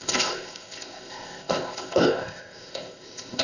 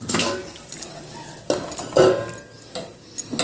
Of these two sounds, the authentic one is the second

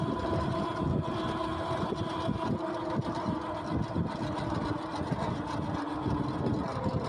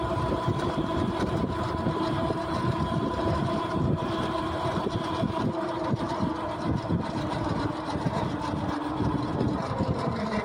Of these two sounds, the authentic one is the first